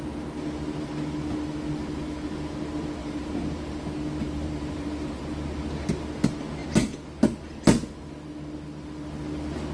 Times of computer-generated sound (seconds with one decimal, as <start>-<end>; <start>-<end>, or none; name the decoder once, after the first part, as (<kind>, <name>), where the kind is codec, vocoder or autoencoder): 3.0-3.8 (vocoder, BigVGAN v2); 4.2-5.2